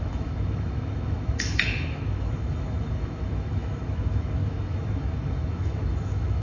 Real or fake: fake